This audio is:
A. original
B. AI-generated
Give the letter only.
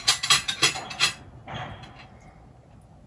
A